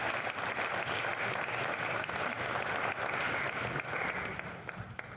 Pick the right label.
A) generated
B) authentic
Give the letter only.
B